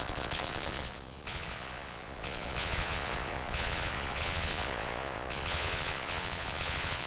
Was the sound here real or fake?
fake